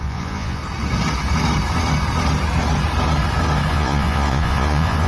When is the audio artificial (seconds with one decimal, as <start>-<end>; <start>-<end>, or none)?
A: 0.0-0.6; 3.7-5.1